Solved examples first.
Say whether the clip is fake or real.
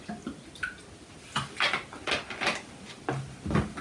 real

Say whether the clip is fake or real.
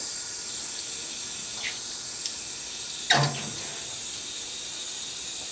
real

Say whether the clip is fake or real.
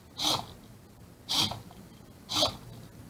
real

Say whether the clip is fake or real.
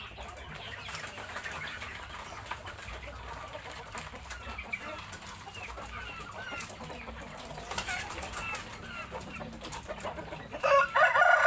real